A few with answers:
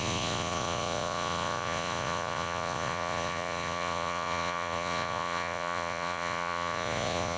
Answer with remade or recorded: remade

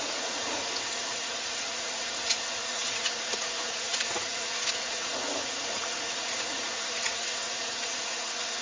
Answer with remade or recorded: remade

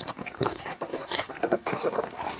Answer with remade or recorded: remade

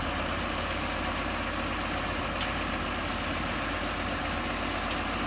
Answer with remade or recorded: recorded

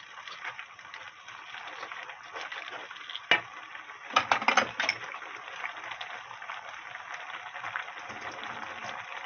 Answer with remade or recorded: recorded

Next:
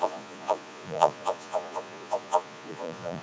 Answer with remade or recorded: remade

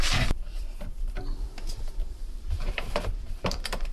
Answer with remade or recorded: remade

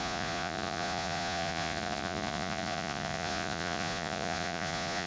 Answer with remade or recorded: remade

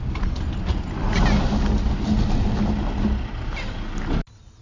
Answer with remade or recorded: recorded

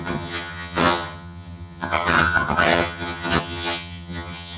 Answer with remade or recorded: remade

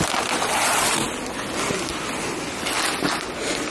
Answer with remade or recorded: recorded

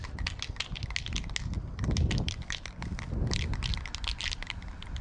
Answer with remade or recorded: recorded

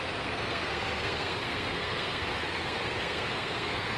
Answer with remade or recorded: remade